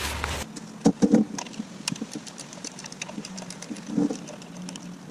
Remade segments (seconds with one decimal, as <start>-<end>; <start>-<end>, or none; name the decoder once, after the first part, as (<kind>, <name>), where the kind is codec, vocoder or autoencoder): 0.8-3.8 (vocoder, BigVGAN v2)